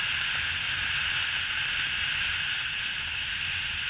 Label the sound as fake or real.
real